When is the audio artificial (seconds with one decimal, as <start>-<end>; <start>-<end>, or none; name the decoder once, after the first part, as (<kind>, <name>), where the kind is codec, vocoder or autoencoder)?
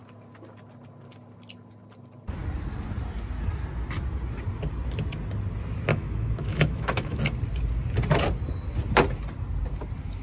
5.9-7.2 (autoencoder, DAC-VAE)